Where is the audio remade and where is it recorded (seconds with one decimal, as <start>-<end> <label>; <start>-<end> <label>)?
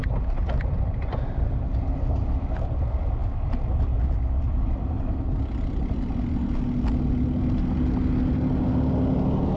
0.0-9.6 recorded